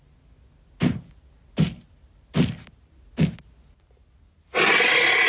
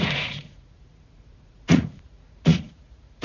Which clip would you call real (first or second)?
first